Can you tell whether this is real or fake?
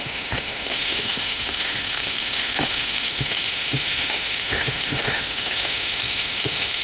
fake